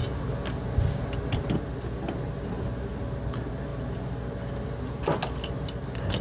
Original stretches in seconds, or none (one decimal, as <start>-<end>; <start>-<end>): 0.0-6.2